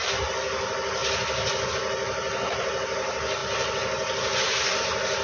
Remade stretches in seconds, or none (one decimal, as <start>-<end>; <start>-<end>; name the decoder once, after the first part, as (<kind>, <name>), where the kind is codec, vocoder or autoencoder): none